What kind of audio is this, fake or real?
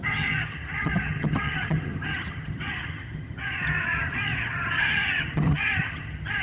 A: fake